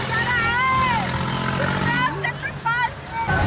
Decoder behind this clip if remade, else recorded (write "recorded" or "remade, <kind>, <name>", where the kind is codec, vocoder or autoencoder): recorded